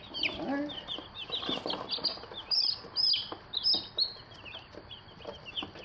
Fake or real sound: real